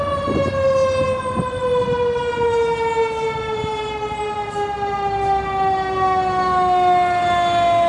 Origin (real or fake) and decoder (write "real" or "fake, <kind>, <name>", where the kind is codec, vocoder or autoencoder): real